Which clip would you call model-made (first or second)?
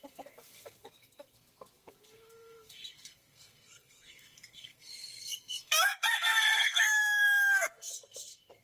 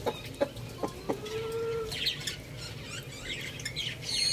first